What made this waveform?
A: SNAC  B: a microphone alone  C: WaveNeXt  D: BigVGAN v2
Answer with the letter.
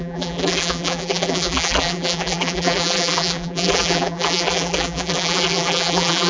D